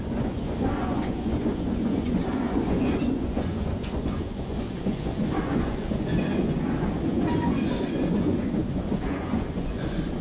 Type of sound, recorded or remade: remade